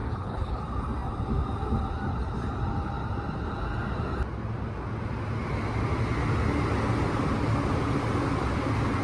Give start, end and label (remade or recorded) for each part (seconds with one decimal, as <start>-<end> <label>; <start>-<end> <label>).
0.0-0.6 remade; 0.6-9.0 recorded